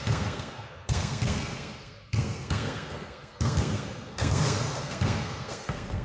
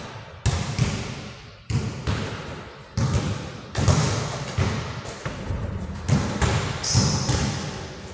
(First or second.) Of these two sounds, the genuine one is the second